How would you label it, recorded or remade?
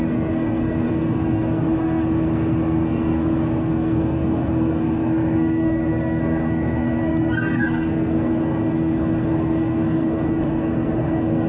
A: remade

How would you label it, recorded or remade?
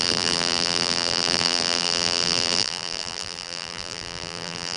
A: remade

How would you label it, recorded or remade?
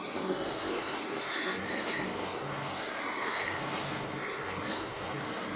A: remade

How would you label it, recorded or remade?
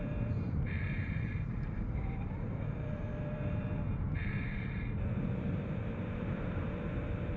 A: remade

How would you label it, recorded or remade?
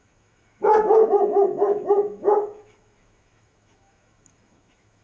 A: remade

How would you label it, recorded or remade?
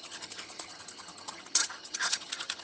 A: remade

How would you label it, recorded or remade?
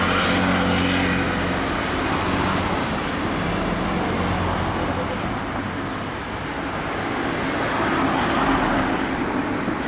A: recorded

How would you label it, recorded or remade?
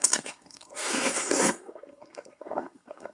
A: remade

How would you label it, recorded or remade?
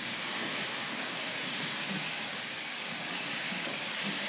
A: remade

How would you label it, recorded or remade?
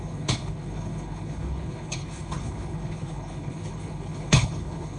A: remade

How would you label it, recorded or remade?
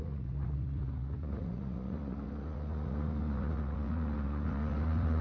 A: remade